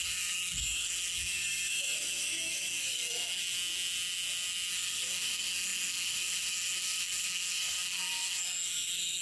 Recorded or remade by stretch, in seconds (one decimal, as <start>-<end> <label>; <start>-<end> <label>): 0.0-3.4 remade; 3.4-4.7 recorded; 4.7-9.2 remade